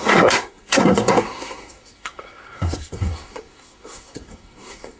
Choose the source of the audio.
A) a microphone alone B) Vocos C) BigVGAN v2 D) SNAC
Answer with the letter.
D